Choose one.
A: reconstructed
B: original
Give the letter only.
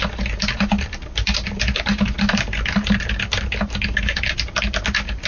B